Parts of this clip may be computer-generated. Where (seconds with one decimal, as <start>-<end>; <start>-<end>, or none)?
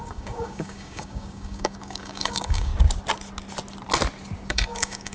0.0-2.7; 4.5-5.1